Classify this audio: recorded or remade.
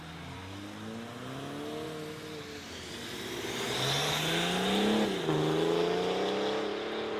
recorded